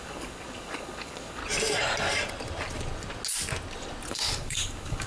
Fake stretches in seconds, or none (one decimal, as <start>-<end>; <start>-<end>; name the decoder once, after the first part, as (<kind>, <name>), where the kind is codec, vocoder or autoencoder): 0.0-1.4 (codec, DAC); 4.1-5.1